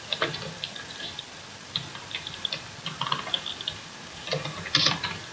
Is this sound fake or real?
fake